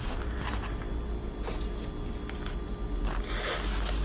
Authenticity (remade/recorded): recorded